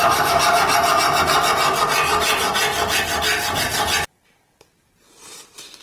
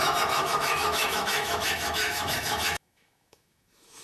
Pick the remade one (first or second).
second